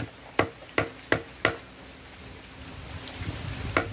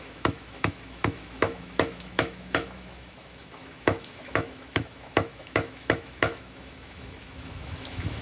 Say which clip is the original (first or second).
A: first